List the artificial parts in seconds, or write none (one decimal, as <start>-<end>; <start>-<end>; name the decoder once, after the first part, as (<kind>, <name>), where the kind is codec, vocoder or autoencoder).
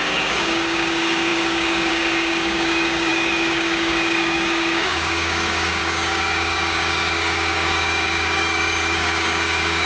0.0-9.9 (codec, DAC)